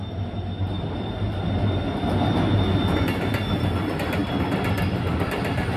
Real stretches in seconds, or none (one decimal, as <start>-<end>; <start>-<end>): 0.0-5.8